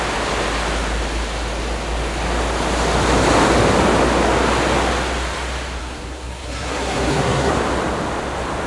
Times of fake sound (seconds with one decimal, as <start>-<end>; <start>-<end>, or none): 5.8-7.5